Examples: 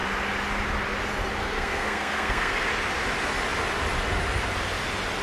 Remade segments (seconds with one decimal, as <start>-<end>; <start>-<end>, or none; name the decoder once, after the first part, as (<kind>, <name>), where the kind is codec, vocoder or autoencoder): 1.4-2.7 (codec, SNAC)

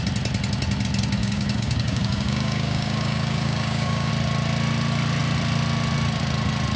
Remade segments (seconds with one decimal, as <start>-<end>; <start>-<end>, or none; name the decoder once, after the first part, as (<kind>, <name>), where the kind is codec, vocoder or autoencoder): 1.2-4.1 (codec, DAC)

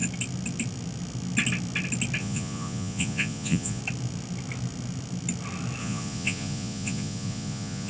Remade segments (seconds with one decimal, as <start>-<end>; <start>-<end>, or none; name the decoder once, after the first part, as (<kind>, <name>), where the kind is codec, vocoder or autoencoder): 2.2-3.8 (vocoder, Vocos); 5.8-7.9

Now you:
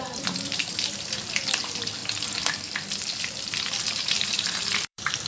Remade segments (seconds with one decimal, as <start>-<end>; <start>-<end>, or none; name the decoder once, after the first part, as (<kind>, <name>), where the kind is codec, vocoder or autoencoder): 0.0-2.0 (vocoder, BigVGAN v2); 3.2-5.3